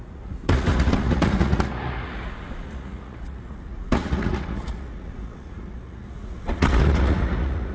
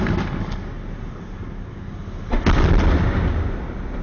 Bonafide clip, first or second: second